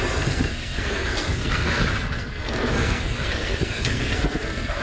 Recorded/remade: remade